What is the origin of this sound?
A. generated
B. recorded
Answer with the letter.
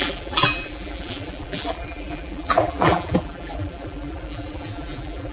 A